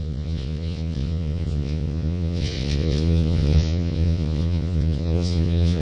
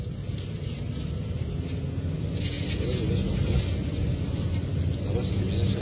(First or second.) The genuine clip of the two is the second